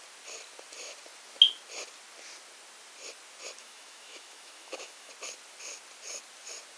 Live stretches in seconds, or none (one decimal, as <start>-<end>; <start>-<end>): 0.0-3.6; 5.1-6.8